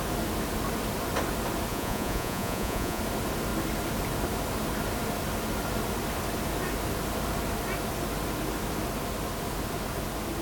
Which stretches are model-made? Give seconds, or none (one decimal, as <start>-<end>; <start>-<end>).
1.7-3.0